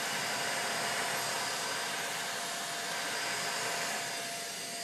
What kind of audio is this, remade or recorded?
recorded